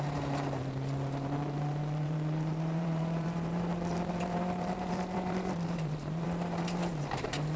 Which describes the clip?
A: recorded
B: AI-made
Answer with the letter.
B